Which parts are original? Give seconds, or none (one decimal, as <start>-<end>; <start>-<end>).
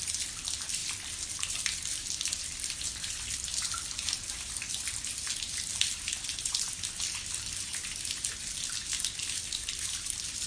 0.0-10.5